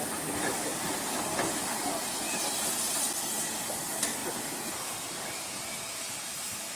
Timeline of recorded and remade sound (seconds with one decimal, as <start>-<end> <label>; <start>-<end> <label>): 0.0-6.8 recorded